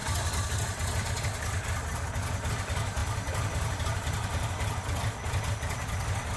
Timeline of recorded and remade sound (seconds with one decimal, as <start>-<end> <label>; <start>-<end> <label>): 0.0-6.4 recorded